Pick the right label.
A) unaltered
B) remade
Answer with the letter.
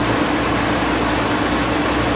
A